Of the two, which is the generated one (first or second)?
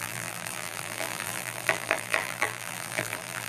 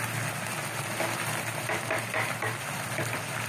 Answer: first